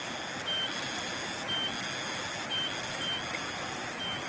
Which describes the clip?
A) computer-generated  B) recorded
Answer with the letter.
B